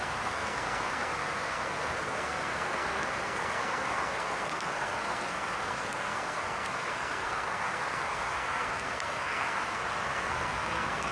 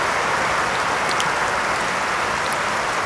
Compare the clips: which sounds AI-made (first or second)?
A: first